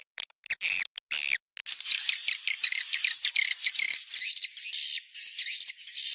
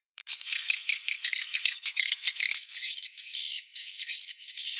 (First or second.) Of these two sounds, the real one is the first